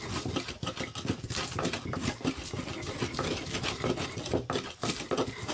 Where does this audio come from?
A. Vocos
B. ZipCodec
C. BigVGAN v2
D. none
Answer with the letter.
D